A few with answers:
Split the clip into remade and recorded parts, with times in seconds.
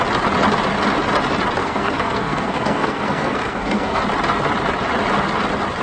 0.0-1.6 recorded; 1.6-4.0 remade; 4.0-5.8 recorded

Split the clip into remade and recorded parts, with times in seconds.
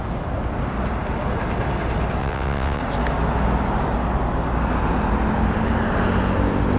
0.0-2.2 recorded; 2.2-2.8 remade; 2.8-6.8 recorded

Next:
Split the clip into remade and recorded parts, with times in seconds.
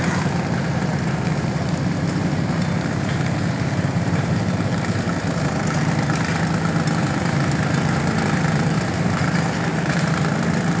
0.0-0.9 recorded; 0.9-5.9 remade; 5.9-7.0 recorded; 7.0-10.1 remade; 10.1-10.8 recorded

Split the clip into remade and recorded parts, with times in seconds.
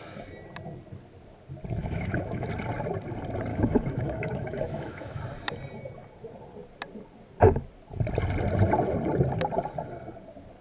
0.0-1.8 recorded; 1.8-2.5 remade; 2.5-3.5 recorded; 3.5-5.2 remade; 5.2-10.6 recorded